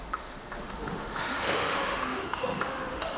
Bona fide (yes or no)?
no